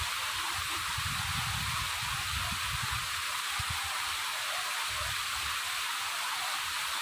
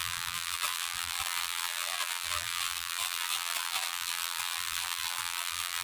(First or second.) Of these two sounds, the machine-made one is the second